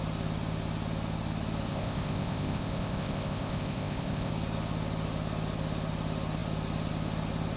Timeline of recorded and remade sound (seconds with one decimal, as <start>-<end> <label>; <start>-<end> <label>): 0.0-1.7 recorded; 1.7-4.3 remade; 4.3-7.6 recorded